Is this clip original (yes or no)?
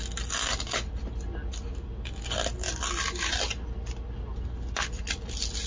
yes